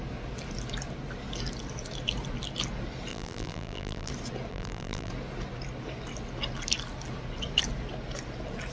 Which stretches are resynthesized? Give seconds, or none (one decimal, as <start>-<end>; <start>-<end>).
3.1-4.1; 4.5-5.1